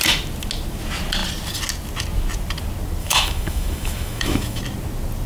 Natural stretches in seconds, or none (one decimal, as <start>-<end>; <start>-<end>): 0.0-3.0; 4.6-5.3